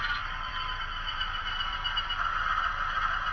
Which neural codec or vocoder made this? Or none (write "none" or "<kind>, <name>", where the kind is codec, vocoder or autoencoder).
none